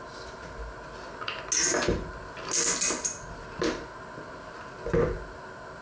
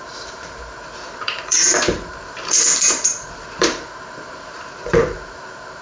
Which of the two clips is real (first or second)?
first